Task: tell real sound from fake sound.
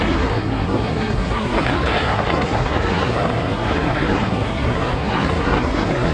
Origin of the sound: fake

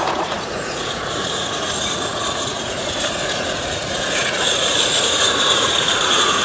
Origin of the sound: fake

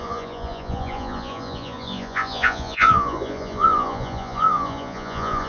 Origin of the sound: fake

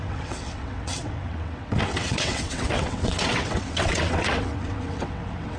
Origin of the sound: fake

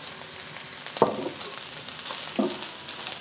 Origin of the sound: real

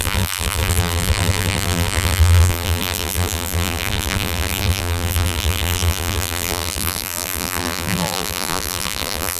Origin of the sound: fake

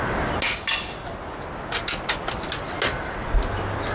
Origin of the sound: real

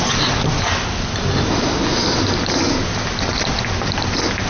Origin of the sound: real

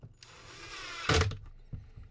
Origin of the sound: real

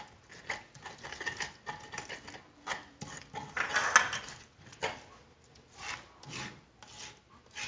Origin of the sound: real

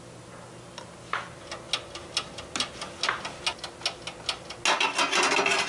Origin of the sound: real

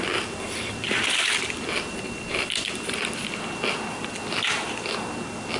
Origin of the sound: real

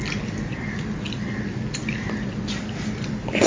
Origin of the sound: real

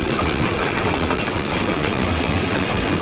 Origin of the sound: fake